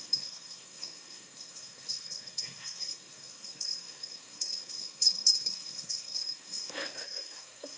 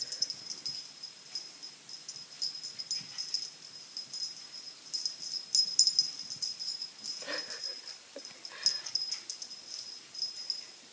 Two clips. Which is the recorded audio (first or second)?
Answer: second